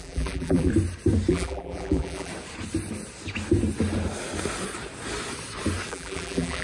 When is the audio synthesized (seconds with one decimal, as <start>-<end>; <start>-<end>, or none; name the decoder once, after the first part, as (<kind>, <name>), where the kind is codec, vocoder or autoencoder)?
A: 0.0-0.7 (vocoder, BigVGAN v2); 1.3-2.3; 5.9-6.6